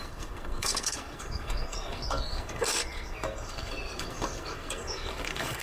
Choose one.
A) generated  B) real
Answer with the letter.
A